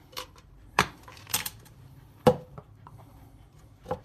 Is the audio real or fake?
fake